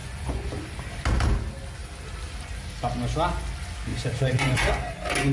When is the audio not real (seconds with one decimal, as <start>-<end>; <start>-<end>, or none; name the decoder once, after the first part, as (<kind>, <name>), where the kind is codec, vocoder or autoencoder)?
0.0-0.5 (vocoder, Vocos); 3.9-4.7